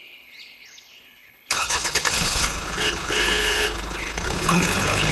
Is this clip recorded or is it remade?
remade